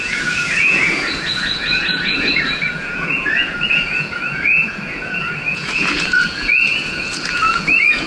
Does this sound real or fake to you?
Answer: fake